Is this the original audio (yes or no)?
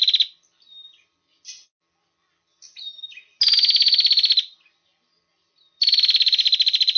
yes